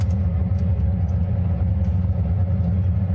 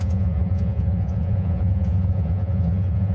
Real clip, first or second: first